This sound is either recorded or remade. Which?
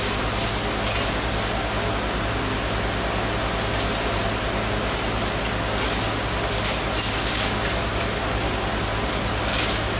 recorded